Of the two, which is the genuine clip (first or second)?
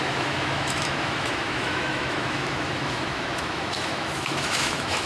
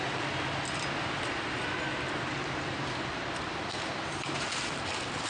second